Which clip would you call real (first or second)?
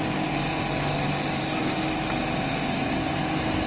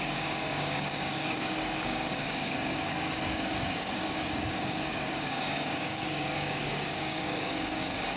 first